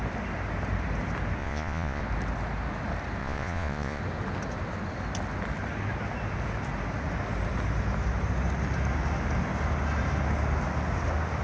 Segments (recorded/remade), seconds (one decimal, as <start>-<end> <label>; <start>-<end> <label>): 0.0-1.4 recorded; 1.4-2.0 remade; 2.0-3.2 recorded; 3.2-4.0 remade; 4.0-11.4 recorded